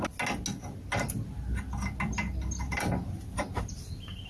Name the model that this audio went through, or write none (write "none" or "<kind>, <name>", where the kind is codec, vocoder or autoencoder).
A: none